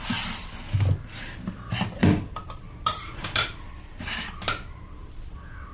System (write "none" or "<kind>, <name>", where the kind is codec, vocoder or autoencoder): vocoder, BigVGAN v2